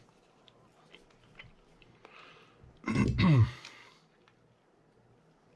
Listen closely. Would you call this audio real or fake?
real